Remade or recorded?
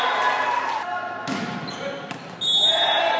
recorded